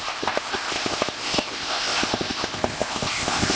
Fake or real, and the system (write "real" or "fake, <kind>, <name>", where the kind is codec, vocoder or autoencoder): fake, codec, ZipCodec